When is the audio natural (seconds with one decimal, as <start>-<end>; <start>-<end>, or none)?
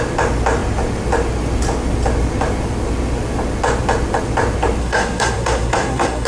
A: 0.0-4.8